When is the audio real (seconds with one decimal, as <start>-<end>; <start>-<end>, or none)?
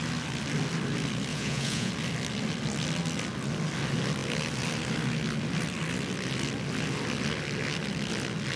0.0-1.3; 1.9-8.6